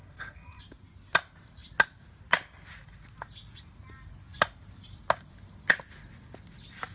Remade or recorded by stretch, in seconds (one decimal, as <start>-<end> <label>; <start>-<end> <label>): 0.0-0.6 remade; 0.6-6.9 recorded